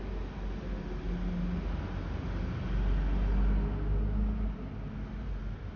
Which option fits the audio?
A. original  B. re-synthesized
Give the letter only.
A